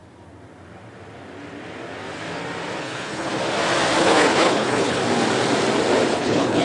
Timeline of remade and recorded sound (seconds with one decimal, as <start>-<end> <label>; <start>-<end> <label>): 0.0-2.8 recorded; 2.8-3.3 remade; 3.3-4.0 recorded; 4.0-5.0 remade; 5.0-6.1 recorded; 6.1-6.6 remade